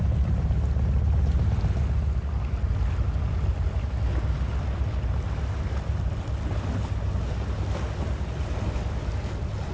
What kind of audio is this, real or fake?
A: real